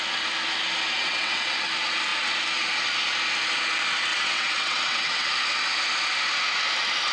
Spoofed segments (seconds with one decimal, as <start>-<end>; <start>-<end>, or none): 1.0-1.7; 4.1-5.3